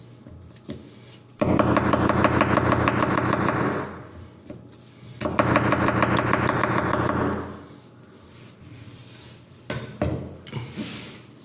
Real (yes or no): yes